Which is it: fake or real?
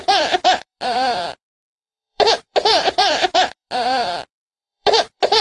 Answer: fake